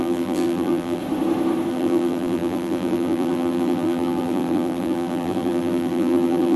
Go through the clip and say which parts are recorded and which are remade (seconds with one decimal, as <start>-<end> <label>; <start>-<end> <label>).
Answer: 0.0-1.0 remade; 1.0-1.7 recorded; 1.7-6.6 remade